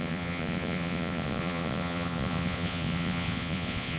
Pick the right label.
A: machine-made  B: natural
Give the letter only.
A